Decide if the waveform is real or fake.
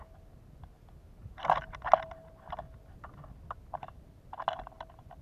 real